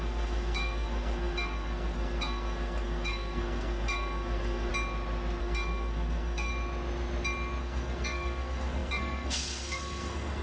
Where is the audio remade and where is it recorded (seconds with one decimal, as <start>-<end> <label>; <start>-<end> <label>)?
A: 0.0-4.7 remade; 4.7-5.4 recorded; 5.4-6.5 remade; 6.5-7.6 recorded; 7.6-10.4 remade